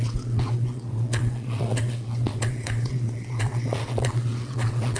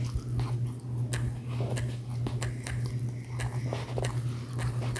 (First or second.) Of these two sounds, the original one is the second